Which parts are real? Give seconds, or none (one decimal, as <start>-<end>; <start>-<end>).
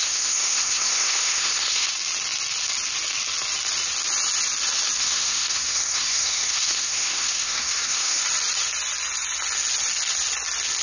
1.9-5.0; 8.2-10.8